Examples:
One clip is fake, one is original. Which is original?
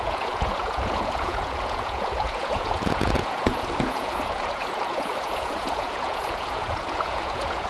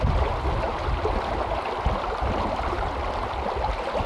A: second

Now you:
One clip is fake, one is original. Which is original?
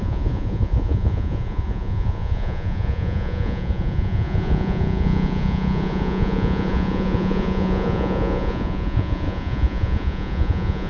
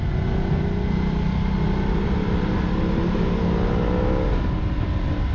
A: second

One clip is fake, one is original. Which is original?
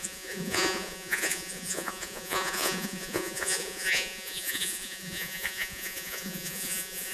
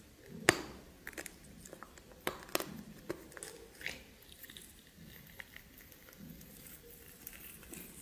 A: second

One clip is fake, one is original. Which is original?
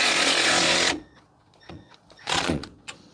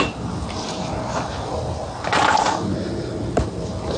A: second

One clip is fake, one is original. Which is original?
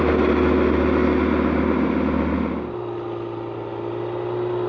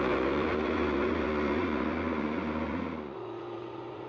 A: first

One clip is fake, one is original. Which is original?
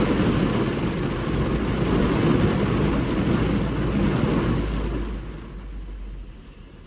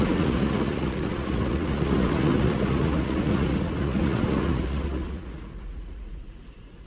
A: first